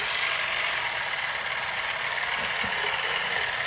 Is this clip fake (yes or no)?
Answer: yes